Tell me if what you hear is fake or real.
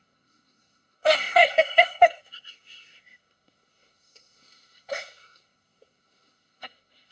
fake